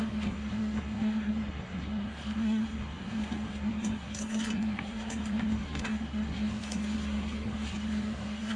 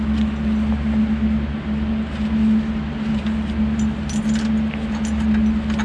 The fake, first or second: first